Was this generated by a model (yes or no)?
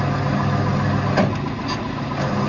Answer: no